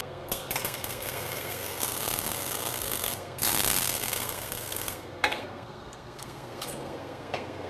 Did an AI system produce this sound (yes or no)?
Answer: yes